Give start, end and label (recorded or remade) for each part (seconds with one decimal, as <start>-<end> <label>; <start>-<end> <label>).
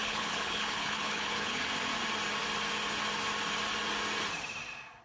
0.0-1.6 remade; 1.6-5.0 recorded